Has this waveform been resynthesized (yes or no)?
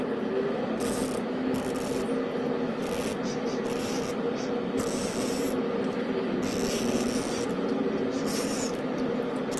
no